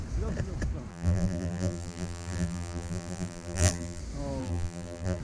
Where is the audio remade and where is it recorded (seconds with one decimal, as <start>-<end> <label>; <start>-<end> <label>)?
0.0-0.9 recorded; 0.9-4.0 remade; 4.0-4.4 recorded; 4.4-5.2 remade